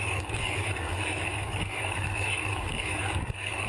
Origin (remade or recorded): remade